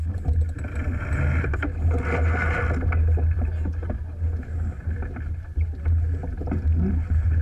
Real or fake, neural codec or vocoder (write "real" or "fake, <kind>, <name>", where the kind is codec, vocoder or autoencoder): real